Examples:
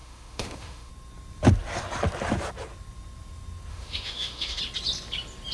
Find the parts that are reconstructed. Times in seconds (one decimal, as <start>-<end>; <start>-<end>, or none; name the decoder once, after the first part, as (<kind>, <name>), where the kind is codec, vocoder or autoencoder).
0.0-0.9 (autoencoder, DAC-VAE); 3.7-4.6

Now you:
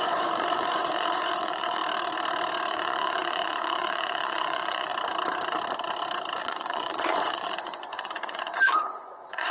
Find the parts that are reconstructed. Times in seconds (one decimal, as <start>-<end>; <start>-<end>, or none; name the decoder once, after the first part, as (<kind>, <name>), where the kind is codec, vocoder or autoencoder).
0.0-1.8 (vocoder, Vocos); 2.7-4.9; 6.4-9.5

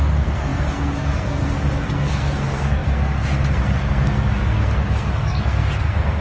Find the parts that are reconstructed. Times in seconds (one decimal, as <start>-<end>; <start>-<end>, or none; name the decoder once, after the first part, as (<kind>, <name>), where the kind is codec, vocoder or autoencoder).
0.0-6.2 (codec, SNAC)

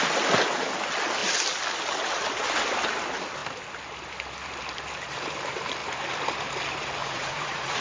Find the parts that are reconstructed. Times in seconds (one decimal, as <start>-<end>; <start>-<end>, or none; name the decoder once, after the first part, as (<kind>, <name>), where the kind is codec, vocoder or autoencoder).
7.0-7.8 (vocoder, Vocos)

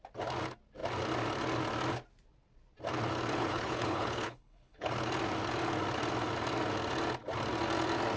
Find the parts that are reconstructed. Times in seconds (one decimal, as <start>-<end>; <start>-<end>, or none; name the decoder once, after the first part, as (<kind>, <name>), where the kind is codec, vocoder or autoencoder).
3.4-4.9 (codec, HILCodec)

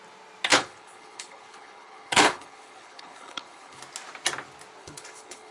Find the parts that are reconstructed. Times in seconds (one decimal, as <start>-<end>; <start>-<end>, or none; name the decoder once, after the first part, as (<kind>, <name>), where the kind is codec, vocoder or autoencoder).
0.5-3.8 (codec, HILCodec); 4.8-5.5